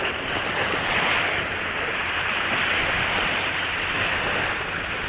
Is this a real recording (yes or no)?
yes